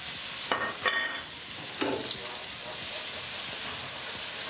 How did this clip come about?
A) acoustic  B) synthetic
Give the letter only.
A